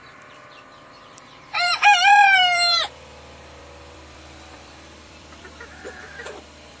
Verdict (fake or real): fake